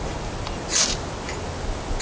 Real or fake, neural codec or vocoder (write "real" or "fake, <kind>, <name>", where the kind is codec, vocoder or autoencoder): real